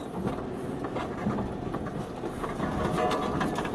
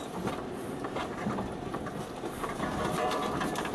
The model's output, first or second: second